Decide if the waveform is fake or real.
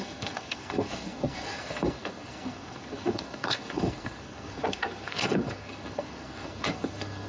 fake